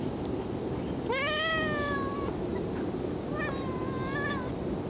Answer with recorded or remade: recorded